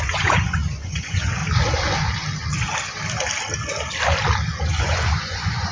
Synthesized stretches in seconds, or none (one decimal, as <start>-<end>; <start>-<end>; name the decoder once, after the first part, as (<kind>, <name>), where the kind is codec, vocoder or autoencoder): 0.0-1.4 (vocoder, Vocos); 4.8-5.7